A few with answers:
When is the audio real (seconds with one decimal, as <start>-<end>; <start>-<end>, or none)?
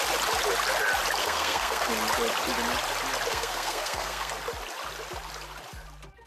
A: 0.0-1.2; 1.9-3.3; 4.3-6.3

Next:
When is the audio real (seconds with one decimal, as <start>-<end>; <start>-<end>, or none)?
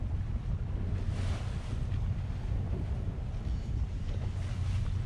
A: 0.0-3.5; 4.3-5.1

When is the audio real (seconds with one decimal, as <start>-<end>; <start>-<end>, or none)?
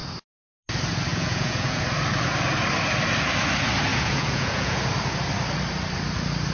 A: 0.0-1.1; 1.8-3.9; 4.8-6.5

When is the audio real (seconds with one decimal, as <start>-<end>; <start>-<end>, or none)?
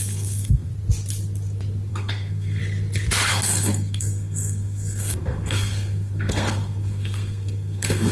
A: 0.7-1.9; 2.6-3.3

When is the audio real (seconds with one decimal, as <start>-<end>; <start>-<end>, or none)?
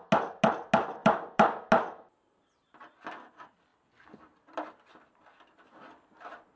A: 0.0-1.0; 1.7-3.7; 4.9-6.6